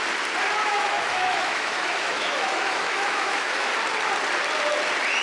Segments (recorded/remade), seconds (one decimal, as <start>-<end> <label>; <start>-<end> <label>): 0.0-0.6 recorded; 0.6-3.7 remade; 3.7-5.2 recorded